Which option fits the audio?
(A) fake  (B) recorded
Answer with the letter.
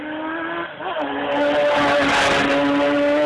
B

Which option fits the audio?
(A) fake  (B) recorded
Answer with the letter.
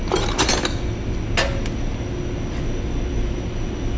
B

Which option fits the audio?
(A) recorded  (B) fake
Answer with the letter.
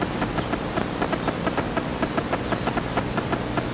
A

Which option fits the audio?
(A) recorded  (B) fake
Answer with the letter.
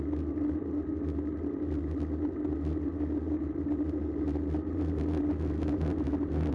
A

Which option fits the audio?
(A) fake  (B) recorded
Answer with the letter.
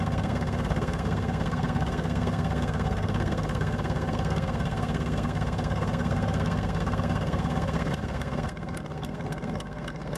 A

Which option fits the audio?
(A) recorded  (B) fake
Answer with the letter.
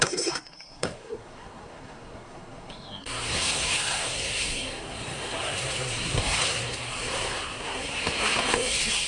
B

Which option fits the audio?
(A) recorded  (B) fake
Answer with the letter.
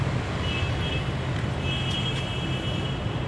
A